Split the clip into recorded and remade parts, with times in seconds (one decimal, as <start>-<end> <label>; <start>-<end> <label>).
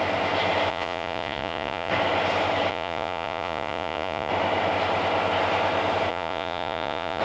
0.0-0.7 recorded; 0.7-1.9 remade; 1.9-2.7 recorded; 2.7-4.3 remade; 4.3-6.1 recorded; 6.1-7.2 remade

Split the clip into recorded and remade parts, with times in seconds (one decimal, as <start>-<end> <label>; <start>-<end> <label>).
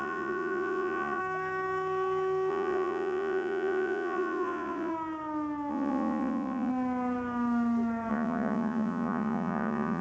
0.0-1.2 remade; 1.2-2.5 recorded; 2.5-4.9 remade; 4.9-5.7 recorded; 5.7-6.7 remade; 6.7-8.1 recorded; 8.1-10.0 remade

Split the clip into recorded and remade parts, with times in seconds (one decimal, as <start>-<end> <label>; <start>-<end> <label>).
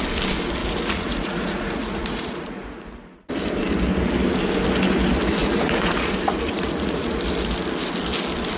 0.0-0.6 recorded; 0.6-3.3 remade; 3.3-5.4 recorded; 5.4-7.2 remade; 7.2-8.6 recorded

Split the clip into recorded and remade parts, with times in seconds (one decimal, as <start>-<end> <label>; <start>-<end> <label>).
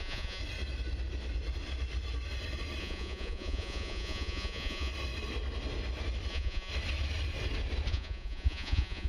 0.0-0.4 remade; 0.4-2.8 recorded; 2.8-4.9 remade; 4.9-6.3 recorded; 6.3-6.7 remade; 6.7-7.9 recorded; 7.9-9.1 remade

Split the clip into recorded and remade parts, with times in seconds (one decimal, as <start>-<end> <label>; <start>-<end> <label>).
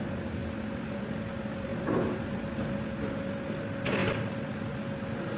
0.0-5.4 recorded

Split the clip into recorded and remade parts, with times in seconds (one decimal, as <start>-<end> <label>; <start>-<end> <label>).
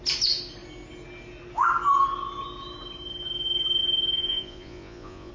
0.0-4.2 recorded; 4.2-5.3 remade